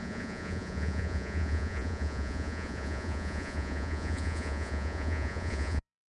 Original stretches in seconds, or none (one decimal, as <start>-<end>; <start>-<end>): none

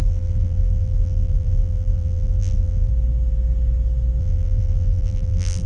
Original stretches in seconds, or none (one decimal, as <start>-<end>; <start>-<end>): 2.9-4.2

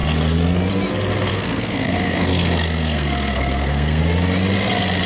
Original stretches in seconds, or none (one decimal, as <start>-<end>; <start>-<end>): 0.0-1.3; 4.0-5.1

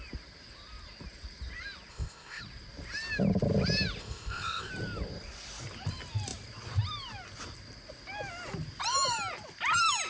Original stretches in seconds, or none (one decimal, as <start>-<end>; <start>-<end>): 0.0-1.9; 2.4-4.0; 4.7-10.1